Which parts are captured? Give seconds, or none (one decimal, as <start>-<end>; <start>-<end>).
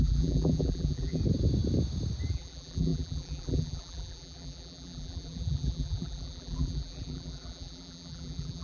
1.2-2.3